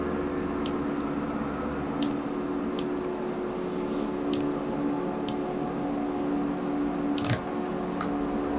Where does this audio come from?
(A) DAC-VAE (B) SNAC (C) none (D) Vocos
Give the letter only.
C